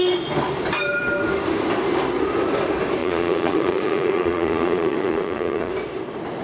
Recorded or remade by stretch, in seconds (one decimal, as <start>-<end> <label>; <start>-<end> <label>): 0.0-3.0 recorded; 3.0-5.7 remade; 5.7-6.4 recorded